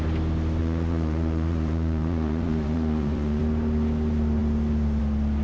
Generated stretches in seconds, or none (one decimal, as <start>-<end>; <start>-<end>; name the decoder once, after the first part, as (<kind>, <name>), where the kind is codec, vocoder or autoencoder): 0.6-3.4 (vocoder, Vocos)